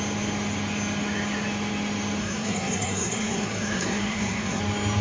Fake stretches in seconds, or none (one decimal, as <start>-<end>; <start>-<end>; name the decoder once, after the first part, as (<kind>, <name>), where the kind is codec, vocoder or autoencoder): 2.2-4.6 (codec, SNAC)